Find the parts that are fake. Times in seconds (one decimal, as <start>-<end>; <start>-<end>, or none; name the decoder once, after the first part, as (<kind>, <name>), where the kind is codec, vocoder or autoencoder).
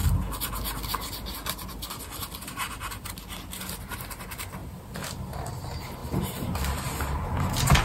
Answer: 0.0-3.8 (vocoder, BigVGAN v2); 4.6-5.2; 6.0-6.8